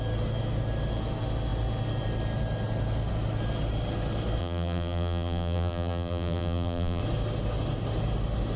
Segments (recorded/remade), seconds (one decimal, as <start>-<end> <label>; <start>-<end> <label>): 0.0-4.4 recorded; 4.4-7.0 remade; 7.0-8.6 recorded